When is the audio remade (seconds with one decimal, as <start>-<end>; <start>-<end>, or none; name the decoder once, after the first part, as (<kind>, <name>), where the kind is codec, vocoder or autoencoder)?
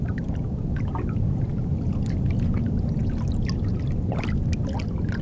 none